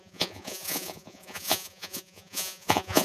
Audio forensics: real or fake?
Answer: fake